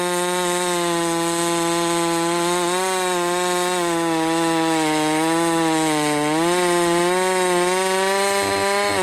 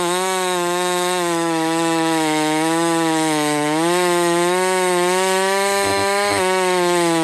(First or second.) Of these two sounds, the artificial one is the second